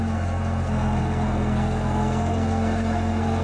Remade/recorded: remade